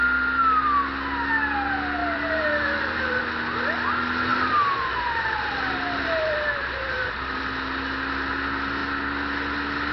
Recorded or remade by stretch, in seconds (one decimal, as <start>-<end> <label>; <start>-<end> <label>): 0.0-2.0 recorded; 2.0-3.2 remade; 3.2-4.3 recorded; 4.3-7.4 remade; 7.4-9.9 recorded